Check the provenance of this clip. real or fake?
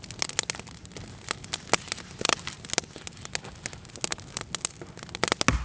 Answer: real